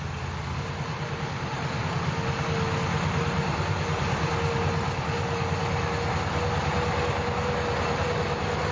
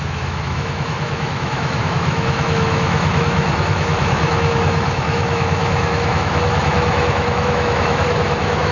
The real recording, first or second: first